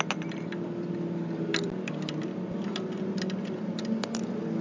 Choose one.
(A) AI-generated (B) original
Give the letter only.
B